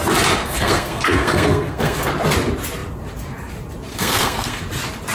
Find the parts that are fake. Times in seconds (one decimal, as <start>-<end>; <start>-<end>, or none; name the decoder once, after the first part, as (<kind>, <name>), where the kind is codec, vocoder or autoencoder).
0.4-2.1 (codec, SNAC); 3.9-4.6